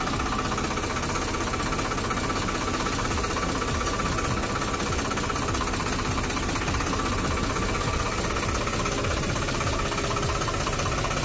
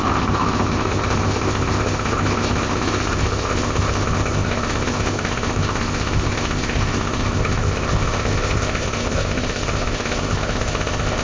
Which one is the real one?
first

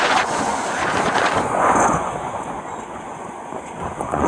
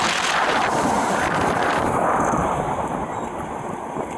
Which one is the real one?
second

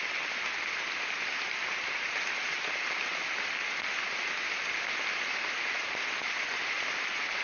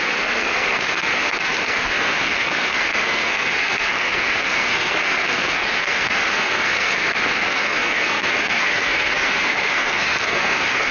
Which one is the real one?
first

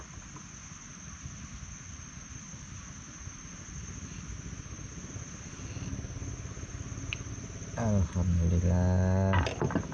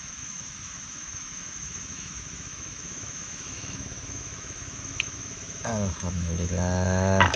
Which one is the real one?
first